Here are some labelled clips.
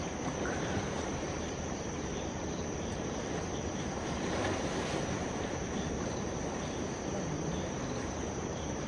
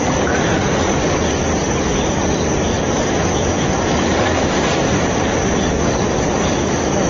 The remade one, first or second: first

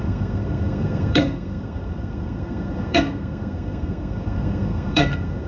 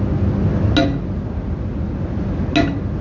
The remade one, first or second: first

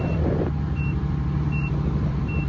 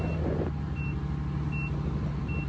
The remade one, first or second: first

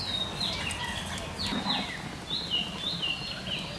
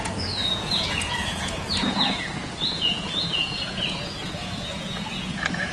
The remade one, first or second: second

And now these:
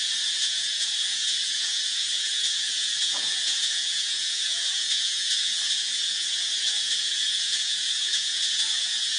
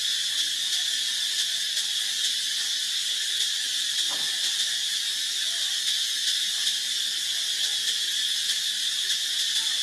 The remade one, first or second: first